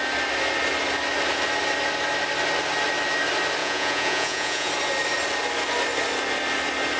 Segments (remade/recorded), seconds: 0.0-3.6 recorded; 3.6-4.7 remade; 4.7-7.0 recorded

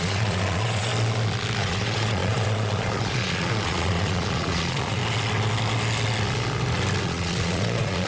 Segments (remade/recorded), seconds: 0.0-0.9 remade; 0.9-1.6 recorded; 1.6-5.0 remade; 5.0-7.0 recorded; 7.0-8.1 remade